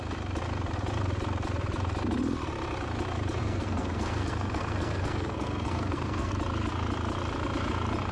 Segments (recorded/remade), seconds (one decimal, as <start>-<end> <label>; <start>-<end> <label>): 0.0-3.4 recorded; 3.4-6.3 remade; 6.3-8.1 recorded